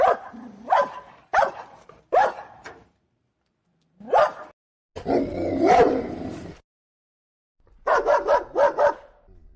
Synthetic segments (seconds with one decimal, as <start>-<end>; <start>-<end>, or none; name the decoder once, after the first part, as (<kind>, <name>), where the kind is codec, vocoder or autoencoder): 1.3-3.3 (vocoder, BigVGAN v2)